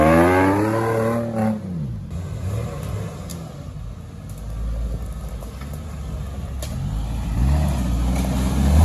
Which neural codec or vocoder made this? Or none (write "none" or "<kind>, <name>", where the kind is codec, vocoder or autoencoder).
none